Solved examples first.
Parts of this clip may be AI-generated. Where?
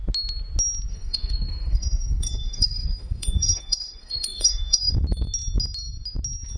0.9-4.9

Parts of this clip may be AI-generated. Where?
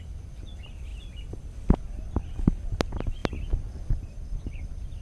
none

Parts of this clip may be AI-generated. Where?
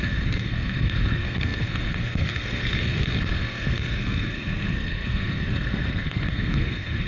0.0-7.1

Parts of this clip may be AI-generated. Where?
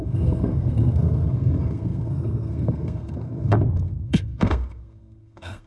0.0-5.7